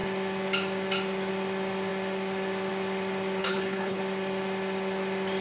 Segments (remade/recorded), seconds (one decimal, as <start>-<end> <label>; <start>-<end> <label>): 0.0-3.4 recorded; 3.4-4.0 remade; 4.0-5.4 recorded

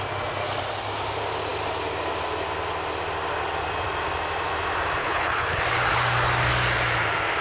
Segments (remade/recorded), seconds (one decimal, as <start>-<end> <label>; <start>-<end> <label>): 0.0-5.0 recorded; 5.0-5.6 remade; 5.6-7.4 recorded

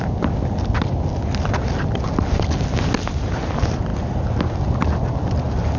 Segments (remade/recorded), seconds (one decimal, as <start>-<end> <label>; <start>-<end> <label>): 0.0-5.8 recorded

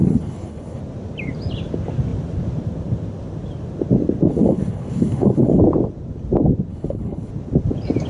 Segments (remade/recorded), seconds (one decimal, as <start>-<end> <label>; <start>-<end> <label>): 0.0-0.8 remade; 0.8-4.3 recorded; 4.3-5.6 remade; 5.6-6.7 recorded; 6.7-7.3 remade; 7.3-8.1 recorded

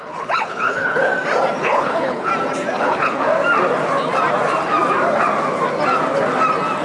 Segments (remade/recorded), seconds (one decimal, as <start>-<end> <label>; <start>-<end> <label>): 0.0-1.1 remade; 1.1-1.6 recorded; 1.6-2.3 remade; 2.3-2.8 recorded; 2.8-3.2 remade; 3.2-6.8 recorded